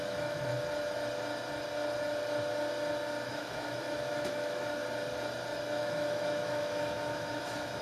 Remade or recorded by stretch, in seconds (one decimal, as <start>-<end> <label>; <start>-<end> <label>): 0.0-0.5 remade; 0.5-3.3 recorded; 3.3-4.8 remade; 4.8-5.8 recorded; 5.8-7.8 remade